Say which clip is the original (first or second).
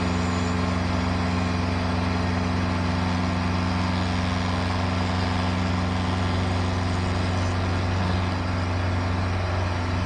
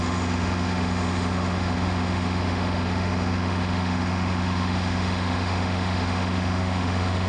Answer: first